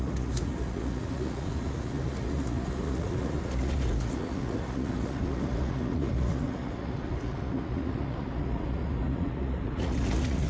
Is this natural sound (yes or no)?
no